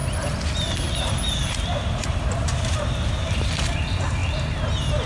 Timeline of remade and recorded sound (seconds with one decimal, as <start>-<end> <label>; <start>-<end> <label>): 0.0-4.2 remade; 4.2-5.1 recorded